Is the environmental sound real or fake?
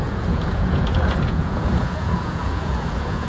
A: fake